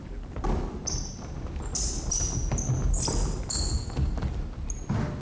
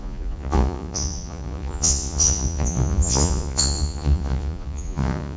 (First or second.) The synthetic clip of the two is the second